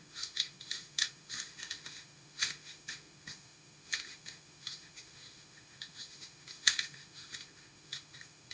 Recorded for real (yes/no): no